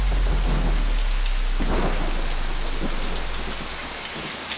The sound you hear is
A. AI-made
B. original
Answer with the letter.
B